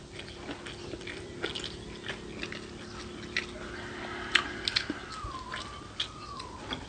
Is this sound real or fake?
real